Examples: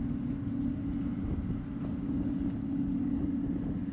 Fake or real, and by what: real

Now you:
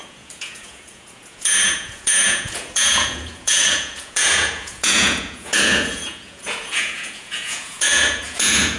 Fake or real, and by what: fake, vocoder, Vocos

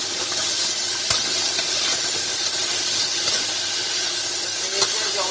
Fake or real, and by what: real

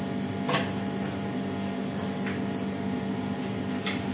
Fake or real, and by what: real